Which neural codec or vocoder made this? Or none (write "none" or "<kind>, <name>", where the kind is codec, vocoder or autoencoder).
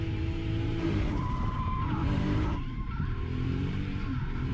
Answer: vocoder, BigVGAN v2